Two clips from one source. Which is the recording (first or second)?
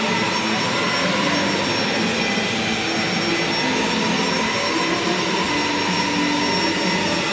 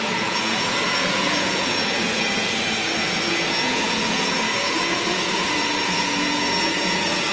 first